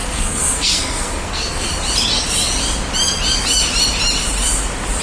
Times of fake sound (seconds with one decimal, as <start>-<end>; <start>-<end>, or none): 0.0-1.7